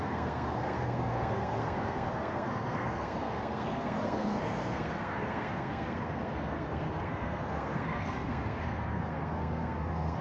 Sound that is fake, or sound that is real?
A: fake